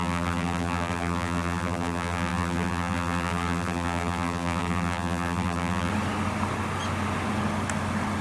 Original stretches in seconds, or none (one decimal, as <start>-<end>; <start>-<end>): 5.9-8.2